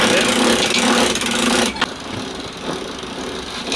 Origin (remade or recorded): recorded